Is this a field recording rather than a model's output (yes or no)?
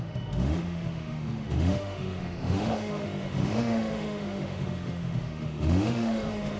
no